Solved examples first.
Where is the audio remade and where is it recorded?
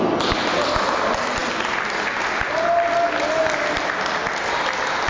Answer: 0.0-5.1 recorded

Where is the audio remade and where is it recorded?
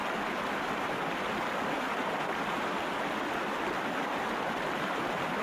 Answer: 0.0-5.4 recorded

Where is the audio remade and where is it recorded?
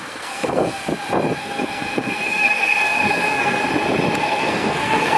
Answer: 0.0-0.8 remade; 0.8-1.4 recorded; 1.4-3.6 remade; 3.6-4.2 recorded; 4.2-5.2 remade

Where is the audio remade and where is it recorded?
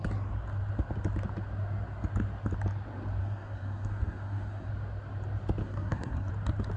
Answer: 0.0-3.2 recorded; 3.2-4.7 remade; 4.7-5.6 recorded; 5.6-6.3 remade; 6.3-6.8 recorded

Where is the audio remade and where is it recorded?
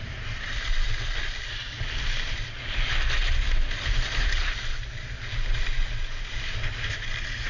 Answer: 0.0-7.5 recorded